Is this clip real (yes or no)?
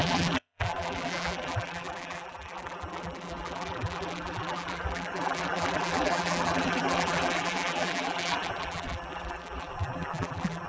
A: no